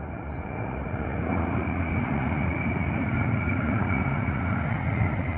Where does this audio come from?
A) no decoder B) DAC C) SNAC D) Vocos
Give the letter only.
D